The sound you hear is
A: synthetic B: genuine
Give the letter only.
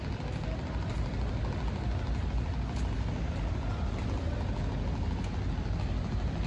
B